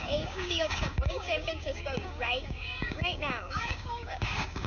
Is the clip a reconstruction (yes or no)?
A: yes